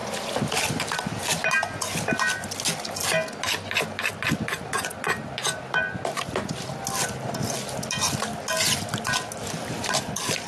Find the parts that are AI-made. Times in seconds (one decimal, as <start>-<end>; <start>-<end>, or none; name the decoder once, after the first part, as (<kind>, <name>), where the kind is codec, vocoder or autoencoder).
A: none